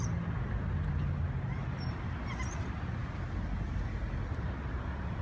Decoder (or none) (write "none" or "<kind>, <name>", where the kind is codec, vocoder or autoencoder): none